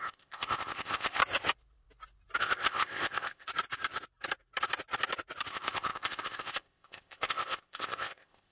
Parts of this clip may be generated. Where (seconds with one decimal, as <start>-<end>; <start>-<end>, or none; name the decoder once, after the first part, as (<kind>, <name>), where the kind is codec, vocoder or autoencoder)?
0.0-1.2 (codec, ZipCodec); 2.4-3.5; 5.5-8.5